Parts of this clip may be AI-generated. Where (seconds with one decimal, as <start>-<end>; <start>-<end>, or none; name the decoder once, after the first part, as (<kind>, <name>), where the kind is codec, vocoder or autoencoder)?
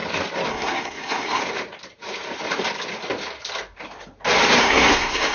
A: 0.5-1.4 (codec, SNAC); 4.6-5.3